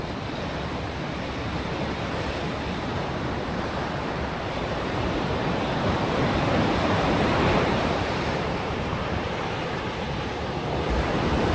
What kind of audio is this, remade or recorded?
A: remade